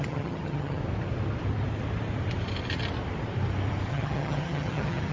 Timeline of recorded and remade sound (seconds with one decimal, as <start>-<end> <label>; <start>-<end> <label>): 0.0-0.8 remade; 0.8-3.9 recorded; 3.9-5.1 remade